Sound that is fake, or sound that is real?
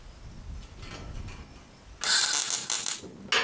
real